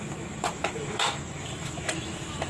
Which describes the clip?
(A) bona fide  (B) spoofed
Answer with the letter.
B